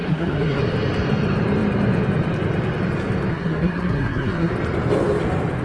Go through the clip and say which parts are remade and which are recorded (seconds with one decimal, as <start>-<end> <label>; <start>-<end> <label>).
0.0-0.6 remade; 0.6-3.3 recorded; 3.3-4.5 remade; 4.5-5.6 recorded